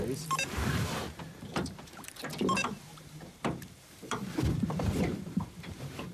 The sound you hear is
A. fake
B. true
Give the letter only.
A